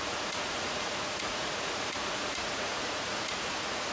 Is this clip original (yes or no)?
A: no